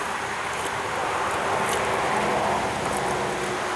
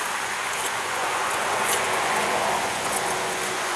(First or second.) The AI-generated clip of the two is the second